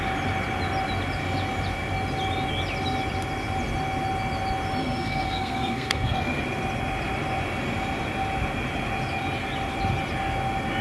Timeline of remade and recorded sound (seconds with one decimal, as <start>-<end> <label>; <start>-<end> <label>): 0.0-4.8 recorded; 4.8-6.4 remade; 6.4-10.8 recorded